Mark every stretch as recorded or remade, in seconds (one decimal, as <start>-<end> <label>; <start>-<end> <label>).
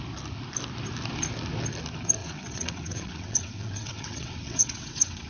0.0-2.2 recorded; 2.2-5.3 remade